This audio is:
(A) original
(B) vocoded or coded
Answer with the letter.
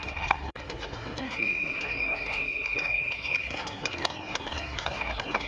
B